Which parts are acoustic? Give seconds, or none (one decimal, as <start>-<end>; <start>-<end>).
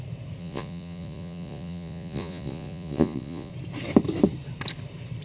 0.0-0.4; 3.5-5.2